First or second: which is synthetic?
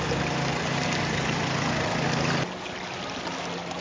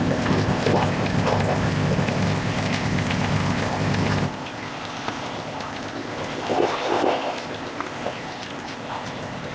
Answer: second